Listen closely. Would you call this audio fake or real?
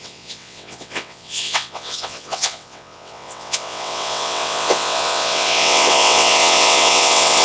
fake